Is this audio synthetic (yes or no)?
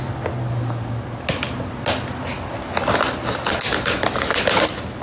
no